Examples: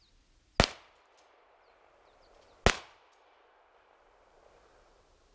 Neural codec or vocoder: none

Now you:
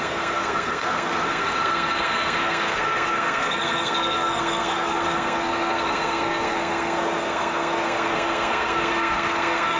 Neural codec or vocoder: codec, SNAC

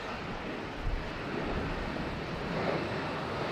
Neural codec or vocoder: none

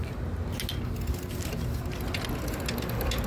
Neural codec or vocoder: none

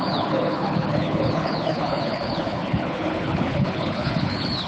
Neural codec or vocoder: codec, HILCodec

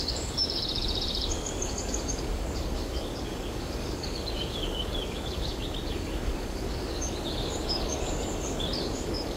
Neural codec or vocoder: codec, DAC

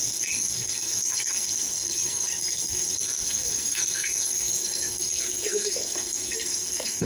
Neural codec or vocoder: codec, SNAC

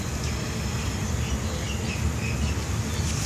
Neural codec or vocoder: none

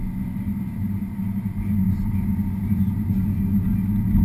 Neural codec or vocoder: none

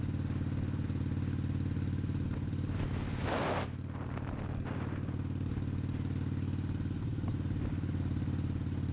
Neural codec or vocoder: none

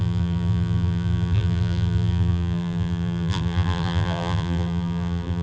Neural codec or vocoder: vocoder, BigVGAN v2